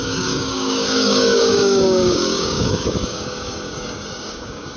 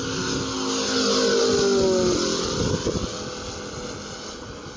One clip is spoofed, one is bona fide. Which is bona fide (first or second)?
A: second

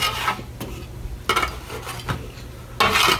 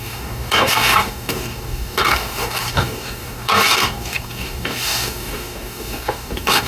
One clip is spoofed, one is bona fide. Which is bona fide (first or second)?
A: first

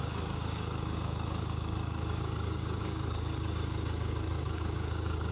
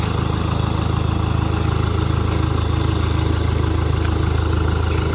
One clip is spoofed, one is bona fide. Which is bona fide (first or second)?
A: second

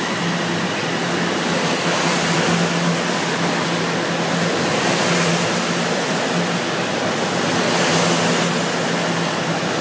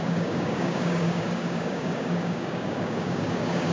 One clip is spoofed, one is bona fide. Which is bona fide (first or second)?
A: first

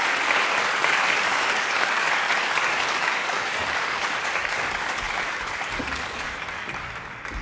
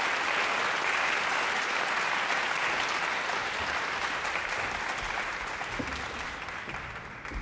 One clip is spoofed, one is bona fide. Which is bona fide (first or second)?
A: second